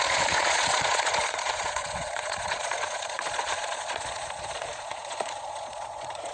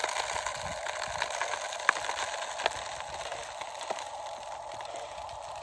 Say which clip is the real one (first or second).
second